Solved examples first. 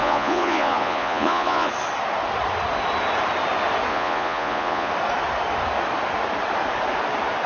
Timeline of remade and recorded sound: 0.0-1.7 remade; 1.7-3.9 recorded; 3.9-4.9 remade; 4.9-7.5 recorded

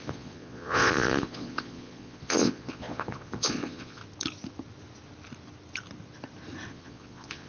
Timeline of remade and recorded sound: 0.0-4.0 remade; 4.0-6.7 recorded; 6.7-7.5 remade

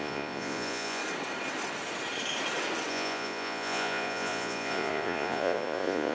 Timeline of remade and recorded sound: 0.0-1.0 remade; 1.0-2.9 recorded; 2.9-6.1 remade

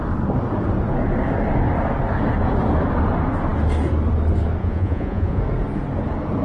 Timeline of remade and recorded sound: 0.0-4.6 recorded; 4.6-5.4 remade; 5.4-6.4 recorded

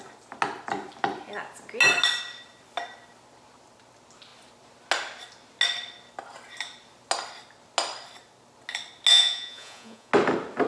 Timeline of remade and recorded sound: 0.0-9.1 recorded; 9.1-10.1 remade; 10.1-10.7 recorded

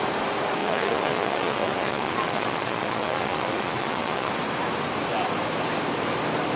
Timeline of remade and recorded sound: 0.0-0.6 recorded; 0.6-4.3 remade; 4.3-6.6 recorded

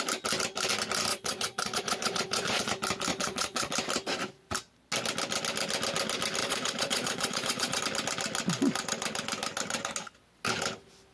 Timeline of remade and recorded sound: 0.0-1.1 recorded; 1.1-2.7 remade; 2.7-3.1 recorded; 3.1-3.7 remade; 3.7-6.4 recorded; 6.4-7.8 remade; 7.8-11.1 recorded

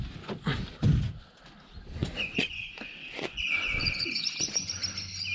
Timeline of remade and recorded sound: 0.0-2.0 recorded; 2.0-4.7 remade; 4.7-5.3 recorded